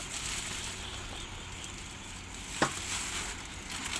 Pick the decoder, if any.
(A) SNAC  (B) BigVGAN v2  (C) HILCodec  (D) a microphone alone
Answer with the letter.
D